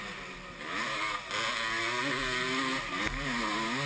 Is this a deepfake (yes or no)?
no